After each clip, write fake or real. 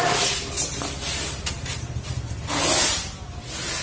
real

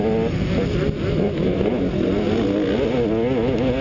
real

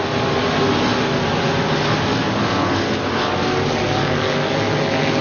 real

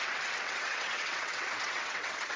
fake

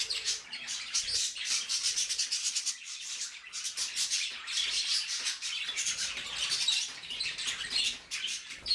fake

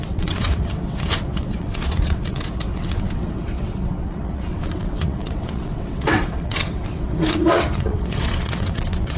fake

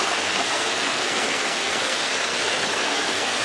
fake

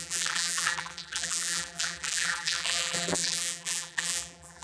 fake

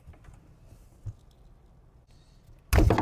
real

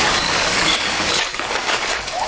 fake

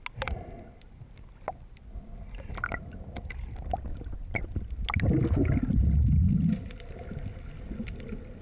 real